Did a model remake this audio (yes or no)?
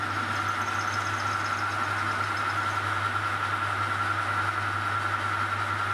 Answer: no